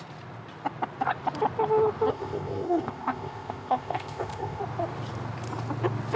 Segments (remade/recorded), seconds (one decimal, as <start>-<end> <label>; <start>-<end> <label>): 0.0-2.1 recorded; 2.1-4.6 remade; 4.6-6.2 recorded